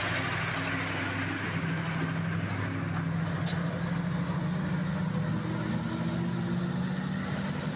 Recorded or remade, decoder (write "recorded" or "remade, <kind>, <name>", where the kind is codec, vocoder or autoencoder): recorded